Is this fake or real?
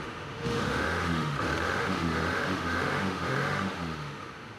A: fake